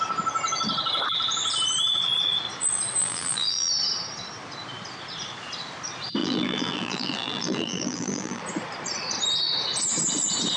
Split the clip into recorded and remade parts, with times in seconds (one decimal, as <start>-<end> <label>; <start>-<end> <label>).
0.0-3.0 recorded; 3.0-3.7 remade; 3.7-6.2 recorded; 6.2-8.4 remade; 8.4-10.6 recorded